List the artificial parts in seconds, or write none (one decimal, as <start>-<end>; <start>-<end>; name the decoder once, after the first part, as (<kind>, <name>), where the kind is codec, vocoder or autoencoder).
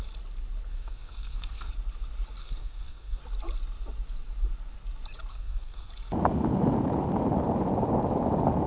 0.7-1.7 (codec, SNAC); 2.4-3.2; 5.3-5.9